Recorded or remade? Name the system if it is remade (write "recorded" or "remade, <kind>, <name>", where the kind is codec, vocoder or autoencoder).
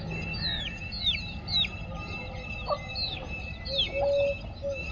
recorded